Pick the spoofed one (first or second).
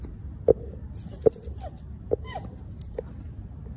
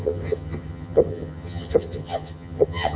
second